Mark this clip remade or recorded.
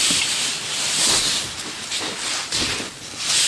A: recorded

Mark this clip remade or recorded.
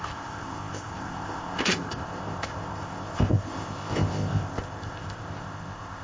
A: remade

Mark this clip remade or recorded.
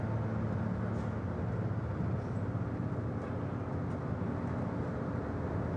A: recorded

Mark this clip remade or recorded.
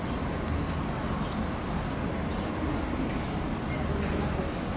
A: recorded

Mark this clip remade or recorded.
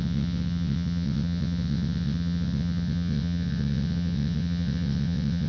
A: remade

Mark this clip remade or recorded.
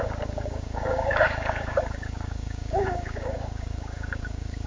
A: remade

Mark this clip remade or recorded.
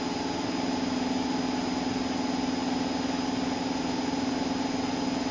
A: recorded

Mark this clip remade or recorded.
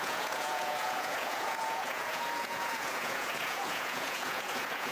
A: remade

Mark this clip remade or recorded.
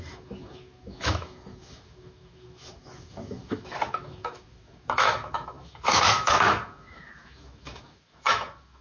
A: remade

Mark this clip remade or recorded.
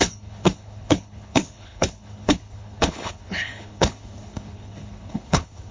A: remade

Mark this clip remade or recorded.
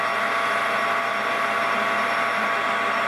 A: recorded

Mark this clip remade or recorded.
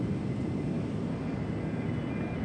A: recorded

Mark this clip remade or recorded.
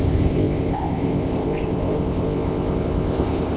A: remade